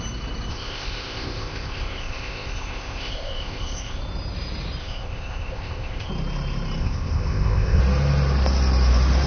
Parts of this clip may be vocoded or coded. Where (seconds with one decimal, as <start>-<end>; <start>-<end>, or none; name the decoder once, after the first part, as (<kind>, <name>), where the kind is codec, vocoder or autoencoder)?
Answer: 0.5-4.0 (codec, ZipCodec); 4.8-6.1; 6.8-7.8